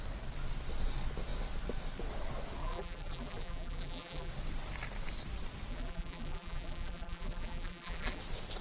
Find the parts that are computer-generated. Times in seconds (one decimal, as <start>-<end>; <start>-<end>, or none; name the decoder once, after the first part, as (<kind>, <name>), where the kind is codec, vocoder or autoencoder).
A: 2.6-4.3 (vocoder, BigVGAN v2); 5.7-8.2